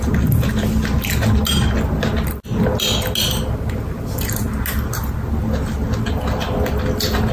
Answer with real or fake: real